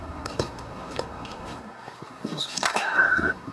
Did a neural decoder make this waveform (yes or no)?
yes